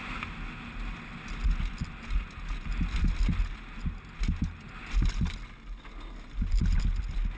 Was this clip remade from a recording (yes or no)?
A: no